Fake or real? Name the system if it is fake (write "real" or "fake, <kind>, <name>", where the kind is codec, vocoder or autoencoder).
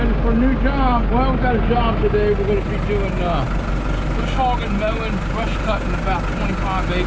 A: real